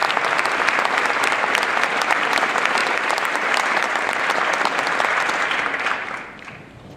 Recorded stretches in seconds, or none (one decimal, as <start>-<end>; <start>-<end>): 0.0-2.8; 4.4-7.0